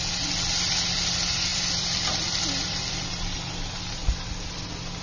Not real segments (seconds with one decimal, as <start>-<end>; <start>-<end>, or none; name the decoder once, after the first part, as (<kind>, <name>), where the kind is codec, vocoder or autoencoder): 1.5-4.5 (vocoder, BigVGAN v2)